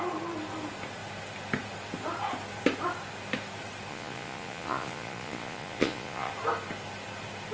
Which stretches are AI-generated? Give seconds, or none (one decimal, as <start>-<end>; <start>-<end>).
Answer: 3.9-6.3